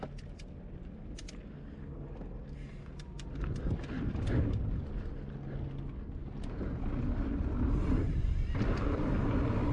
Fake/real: real